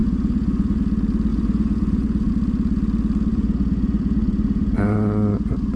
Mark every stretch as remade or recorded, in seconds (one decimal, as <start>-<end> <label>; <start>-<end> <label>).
0.0-0.8 remade; 0.8-1.3 recorded; 1.3-2.3 remade; 2.3-3.3 recorded; 3.3-5.8 remade